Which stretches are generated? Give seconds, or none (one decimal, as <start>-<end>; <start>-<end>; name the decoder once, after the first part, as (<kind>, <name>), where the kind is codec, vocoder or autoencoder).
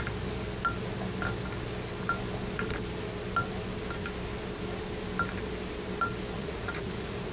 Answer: 6.4-7.3 (vocoder, Vocos)